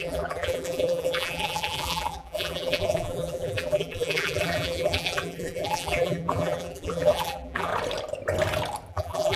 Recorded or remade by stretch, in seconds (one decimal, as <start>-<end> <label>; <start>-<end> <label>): 0.0-7.7 remade; 7.7-8.9 recorded; 8.9-9.4 remade